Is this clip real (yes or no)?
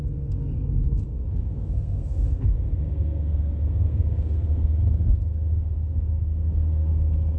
no